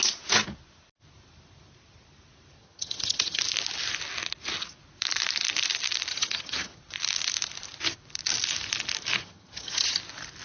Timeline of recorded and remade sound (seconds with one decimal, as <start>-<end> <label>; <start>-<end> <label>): 0.0-2.6 recorded; 2.6-3.4 remade; 3.4-6.1 recorded; 6.1-6.8 remade; 6.8-9.2 recorded; 9.2-10.0 remade; 10.0-10.4 recorded